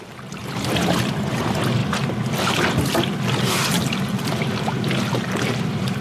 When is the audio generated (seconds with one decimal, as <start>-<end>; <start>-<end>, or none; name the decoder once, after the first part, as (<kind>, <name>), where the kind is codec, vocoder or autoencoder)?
0.0-0.4 (vocoder, BigVGAN v2); 1.4-1.8; 5.4-6.0